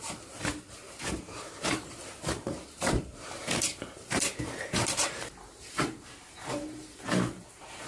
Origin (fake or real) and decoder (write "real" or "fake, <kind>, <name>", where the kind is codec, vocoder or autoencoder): fake, vocoder, BigVGAN v2